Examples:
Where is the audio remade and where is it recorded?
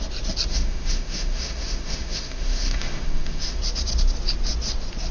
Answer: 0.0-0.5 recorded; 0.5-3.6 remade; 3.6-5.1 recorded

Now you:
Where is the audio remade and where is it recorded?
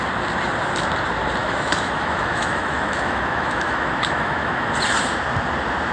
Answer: 0.0-1.4 recorded; 1.4-4.7 remade; 4.7-5.9 recorded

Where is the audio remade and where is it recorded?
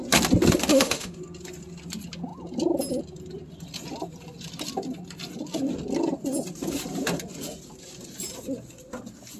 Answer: 0.0-0.7 recorded; 0.7-1.2 remade; 1.2-9.4 recorded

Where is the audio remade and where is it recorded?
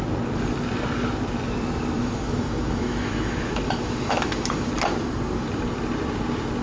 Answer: 0.0-2.0 recorded; 2.0-4.7 remade; 4.7-6.6 recorded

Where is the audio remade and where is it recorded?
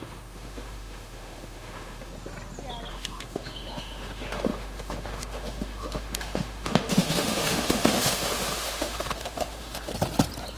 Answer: 0.0-2.1 remade; 2.1-2.9 recorded; 2.9-9.9 remade; 9.9-10.6 recorded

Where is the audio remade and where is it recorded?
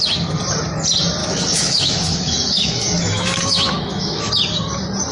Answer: 0.0-1.2 recorded; 1.2-4.3 remade; 4.3-5.1 recorded